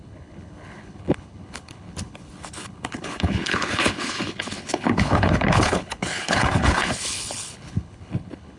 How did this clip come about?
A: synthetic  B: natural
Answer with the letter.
A